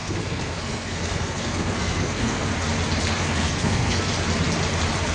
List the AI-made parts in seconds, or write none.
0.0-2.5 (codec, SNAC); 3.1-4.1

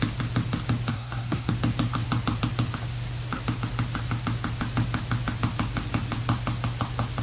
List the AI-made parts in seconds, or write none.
0.9-1.5 (codec, SNAC)

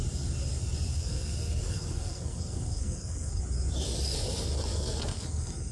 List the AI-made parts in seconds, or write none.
0.9-3.4 (codec, SNAC); 4.7-5.7

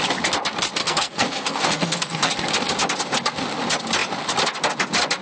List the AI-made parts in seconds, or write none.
0.8-2.3 (codec, SNAC)

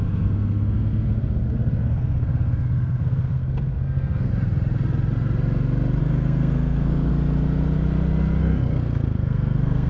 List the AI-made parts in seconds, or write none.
0.0-4.3 (codec, SNAC); 6.0-7.1; 8.4-9.9

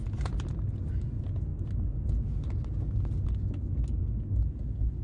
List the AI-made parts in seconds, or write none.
none

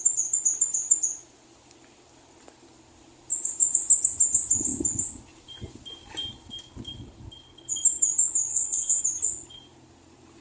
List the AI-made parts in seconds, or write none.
8.5-9.0 (codec, SNAC)

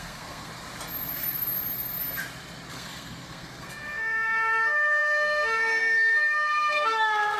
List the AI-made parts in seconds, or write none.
0.0-0.5 (codec, SNAC); 2.7-7.4